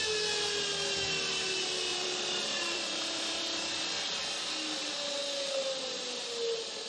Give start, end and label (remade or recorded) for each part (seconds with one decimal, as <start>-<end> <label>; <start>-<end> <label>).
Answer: 0.0-1.9 recorded; 1.9-3.8 remade; 3.8-6.9 recorded

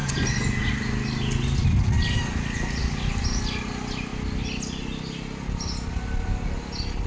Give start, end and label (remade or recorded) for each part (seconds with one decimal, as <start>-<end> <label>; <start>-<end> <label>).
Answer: 0.0-7.1 recorded